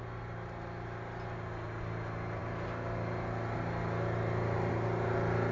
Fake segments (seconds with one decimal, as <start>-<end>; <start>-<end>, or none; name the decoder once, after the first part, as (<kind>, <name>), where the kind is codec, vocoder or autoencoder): none